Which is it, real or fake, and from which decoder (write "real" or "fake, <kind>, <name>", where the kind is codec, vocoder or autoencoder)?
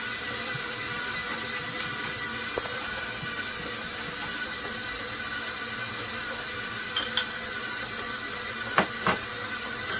real